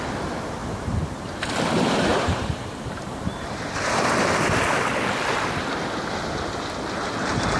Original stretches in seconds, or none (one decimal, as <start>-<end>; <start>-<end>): 0.0-0.6; 1.6-2.1; 4.3-7.6